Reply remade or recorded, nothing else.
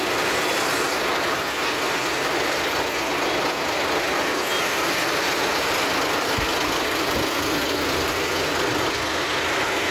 recorded